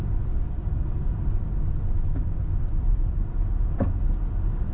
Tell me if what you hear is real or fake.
real